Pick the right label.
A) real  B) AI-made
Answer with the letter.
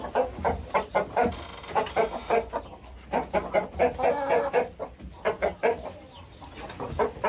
A